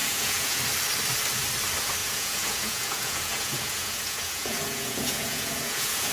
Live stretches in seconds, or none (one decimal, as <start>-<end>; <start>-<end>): 0.6-2.0